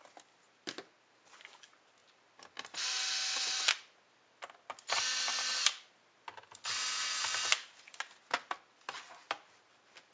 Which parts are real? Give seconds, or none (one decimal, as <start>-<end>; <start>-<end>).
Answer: 0.0-10.1